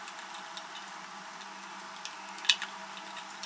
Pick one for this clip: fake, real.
real